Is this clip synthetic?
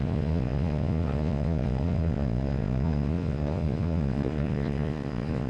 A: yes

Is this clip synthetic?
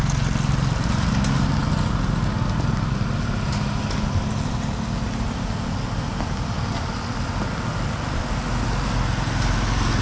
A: no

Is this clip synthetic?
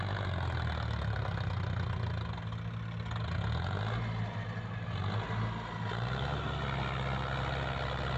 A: no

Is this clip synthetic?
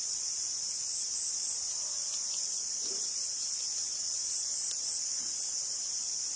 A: no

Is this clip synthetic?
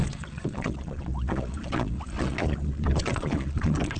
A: yes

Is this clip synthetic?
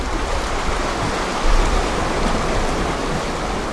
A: no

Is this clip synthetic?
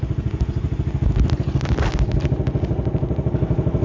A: no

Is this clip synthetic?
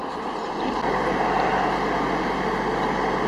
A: no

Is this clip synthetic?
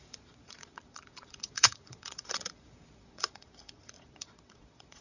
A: yes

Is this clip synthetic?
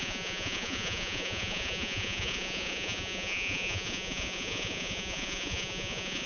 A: yes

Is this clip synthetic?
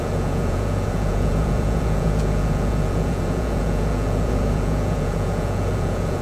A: yes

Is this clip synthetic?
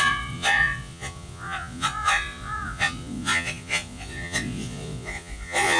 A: yes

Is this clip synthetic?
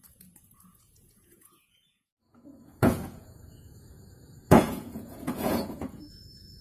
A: yes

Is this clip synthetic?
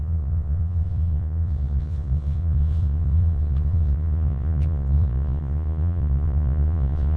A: yes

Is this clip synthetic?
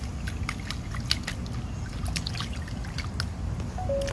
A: no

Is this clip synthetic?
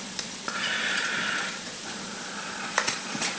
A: yes